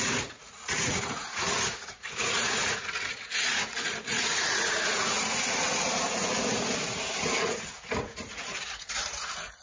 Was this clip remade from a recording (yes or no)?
yes